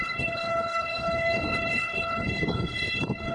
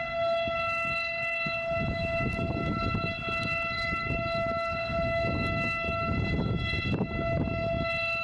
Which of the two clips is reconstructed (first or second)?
first